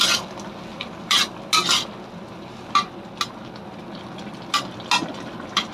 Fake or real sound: real